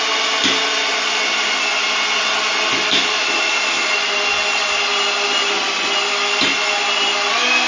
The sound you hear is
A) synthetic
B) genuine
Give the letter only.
B